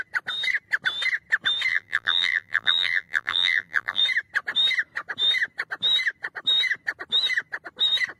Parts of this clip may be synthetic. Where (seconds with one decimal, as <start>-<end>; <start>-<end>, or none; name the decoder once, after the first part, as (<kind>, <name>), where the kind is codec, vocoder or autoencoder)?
1.7-4.0 (vocoder, BigVGAN v2)